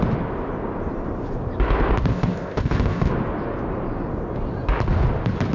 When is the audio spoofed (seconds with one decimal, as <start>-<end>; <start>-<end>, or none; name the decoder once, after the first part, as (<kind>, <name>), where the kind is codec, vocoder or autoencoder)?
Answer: 2.1-3.1 (codec, ZipCodec)